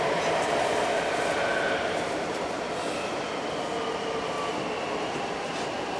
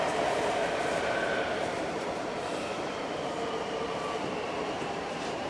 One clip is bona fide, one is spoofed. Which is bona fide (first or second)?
first